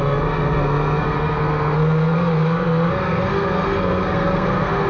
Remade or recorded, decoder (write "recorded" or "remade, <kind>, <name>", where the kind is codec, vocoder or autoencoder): remade, codec, SNAC